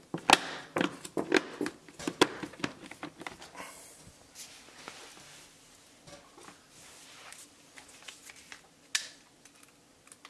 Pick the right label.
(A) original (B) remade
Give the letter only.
A